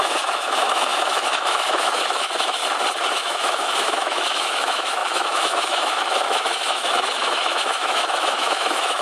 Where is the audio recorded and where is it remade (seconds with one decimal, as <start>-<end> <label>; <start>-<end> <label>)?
0.0-2.6 remade; 2.6-3.1 recorded; 3.1-9.0 remade